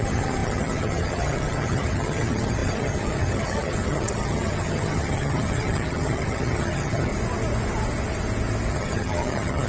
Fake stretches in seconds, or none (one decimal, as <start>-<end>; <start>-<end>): 0.0-7.1; 8.7-9.7